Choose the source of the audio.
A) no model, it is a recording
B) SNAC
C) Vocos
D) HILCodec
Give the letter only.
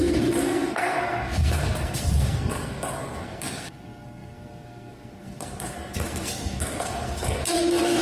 B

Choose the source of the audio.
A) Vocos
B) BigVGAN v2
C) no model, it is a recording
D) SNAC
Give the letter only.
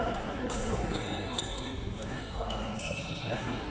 D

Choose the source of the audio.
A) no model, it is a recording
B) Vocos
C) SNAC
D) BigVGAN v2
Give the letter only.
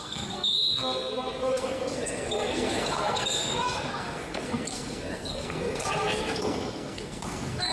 C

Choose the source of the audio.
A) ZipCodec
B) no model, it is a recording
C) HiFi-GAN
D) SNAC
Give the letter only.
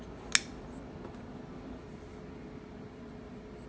B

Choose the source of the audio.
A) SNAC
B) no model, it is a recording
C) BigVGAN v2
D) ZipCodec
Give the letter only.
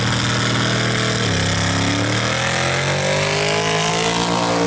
B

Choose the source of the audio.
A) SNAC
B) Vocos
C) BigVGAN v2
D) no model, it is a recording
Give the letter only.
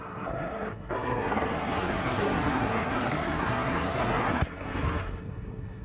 A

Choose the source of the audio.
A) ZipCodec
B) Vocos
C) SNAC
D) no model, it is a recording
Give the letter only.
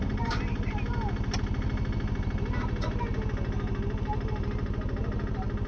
D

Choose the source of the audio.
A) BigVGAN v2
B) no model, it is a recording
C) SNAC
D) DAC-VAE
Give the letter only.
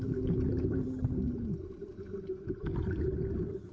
B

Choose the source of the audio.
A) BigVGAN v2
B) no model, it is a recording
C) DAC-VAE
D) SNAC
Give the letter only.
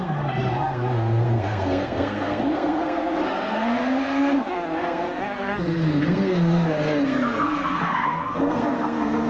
D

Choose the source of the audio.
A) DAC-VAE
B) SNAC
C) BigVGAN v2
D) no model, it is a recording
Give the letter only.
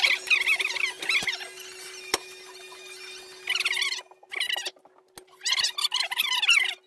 D